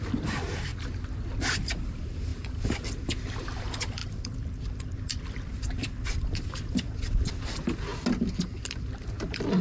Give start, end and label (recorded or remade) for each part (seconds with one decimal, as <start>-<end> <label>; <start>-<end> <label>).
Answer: 0.0-0.7 remade; 0.7-1.3 recorded; 1.3-7.9 remade; 7.9-8.8 recorded; 8.8-9.6 remade